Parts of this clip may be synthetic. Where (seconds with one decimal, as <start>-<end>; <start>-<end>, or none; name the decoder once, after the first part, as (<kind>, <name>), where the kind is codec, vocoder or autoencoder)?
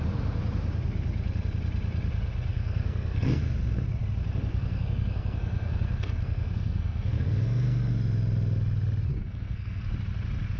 2.5-3.4 (codec, SNAC); 4.5-7.9; 9.1-9.8